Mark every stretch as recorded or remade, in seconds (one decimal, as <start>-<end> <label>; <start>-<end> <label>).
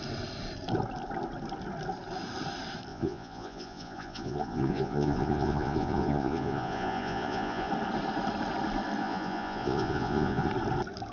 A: 0.0-2.9 recorded; 2.9-7.7 remade; 7.7-9.0 recorded; 9.0-10.5 remade; 10.5-11.1 recorded